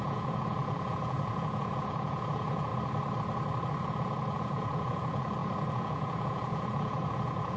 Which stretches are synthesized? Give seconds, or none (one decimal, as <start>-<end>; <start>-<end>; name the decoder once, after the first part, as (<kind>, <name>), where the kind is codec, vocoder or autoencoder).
0.0-2.7 (vocoder, Vocos); 3.8-7.6